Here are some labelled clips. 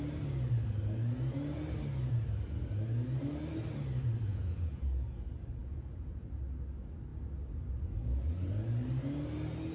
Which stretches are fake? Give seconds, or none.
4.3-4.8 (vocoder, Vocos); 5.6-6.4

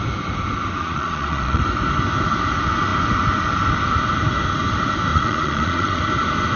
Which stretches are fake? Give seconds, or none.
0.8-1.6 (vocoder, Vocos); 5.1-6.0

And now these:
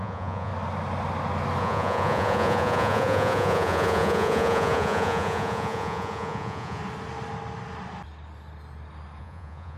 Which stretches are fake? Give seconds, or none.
0.0-0.5 (vocoder, Vocos); 1.6-6.8; 9.2-9.8